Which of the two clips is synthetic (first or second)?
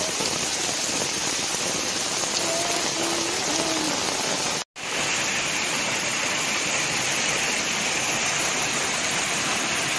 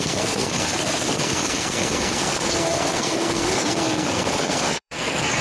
second